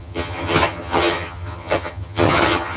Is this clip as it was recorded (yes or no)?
no